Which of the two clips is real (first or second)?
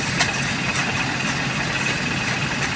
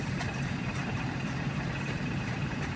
first